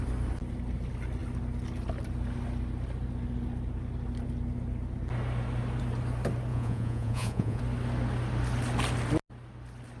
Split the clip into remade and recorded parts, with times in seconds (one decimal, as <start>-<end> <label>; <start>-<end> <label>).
0.0-6.5 recorded; 6.5-7.6 remade; 7.6-10.0 recorded